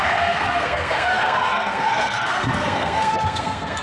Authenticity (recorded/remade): remade